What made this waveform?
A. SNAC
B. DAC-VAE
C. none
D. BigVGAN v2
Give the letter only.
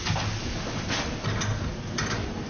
C